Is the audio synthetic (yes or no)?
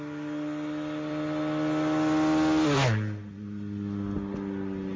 no